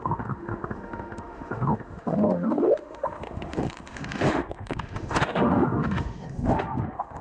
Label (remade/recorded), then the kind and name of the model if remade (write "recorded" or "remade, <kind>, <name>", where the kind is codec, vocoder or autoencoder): remade, autoencoder, DAC-VAE